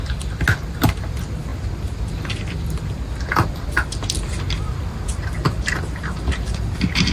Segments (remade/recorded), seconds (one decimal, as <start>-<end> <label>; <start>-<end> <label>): 0.0-7.1 recorded